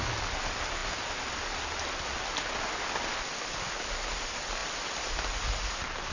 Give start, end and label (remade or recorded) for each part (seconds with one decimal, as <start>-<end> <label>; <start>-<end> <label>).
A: 0.0-6.1 recorded